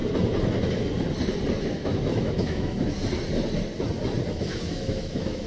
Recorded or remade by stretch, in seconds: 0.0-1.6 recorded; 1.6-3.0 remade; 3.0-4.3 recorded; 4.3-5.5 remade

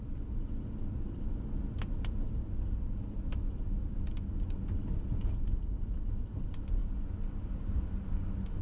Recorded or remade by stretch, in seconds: 0.0-8.6 recorded